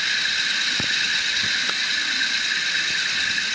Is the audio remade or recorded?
recorded